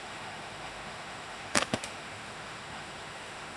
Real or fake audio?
fake